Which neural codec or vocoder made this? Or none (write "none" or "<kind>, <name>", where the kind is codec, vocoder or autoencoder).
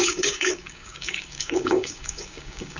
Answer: codec, DAC